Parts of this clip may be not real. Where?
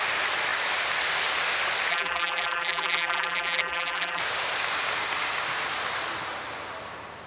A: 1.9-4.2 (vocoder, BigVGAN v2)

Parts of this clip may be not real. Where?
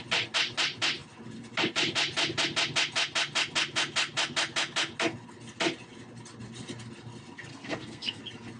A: 7.5-8.2 (codec, SNAC)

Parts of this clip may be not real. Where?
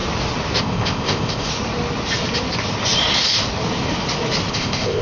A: 0.6-1.5 (codec, ZipCodec); 4.5-5.0